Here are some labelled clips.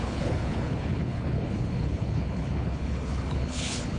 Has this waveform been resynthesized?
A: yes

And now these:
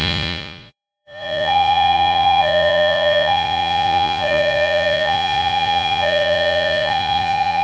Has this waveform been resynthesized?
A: yes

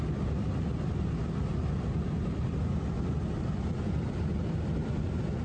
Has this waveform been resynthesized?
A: no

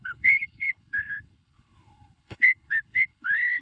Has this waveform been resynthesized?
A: yes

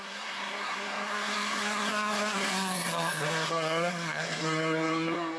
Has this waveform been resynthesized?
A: yes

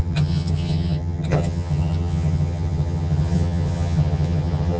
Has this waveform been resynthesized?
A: yes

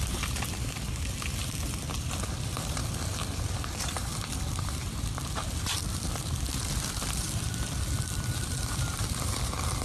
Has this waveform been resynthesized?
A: yes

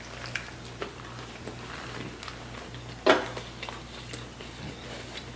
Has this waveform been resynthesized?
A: no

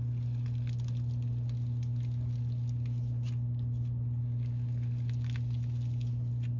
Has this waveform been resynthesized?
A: no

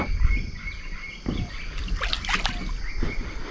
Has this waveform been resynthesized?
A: no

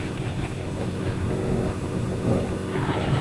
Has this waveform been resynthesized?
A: yes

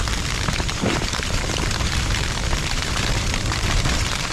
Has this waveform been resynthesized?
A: yes